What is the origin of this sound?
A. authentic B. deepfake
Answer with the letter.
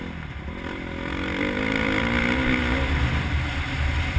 A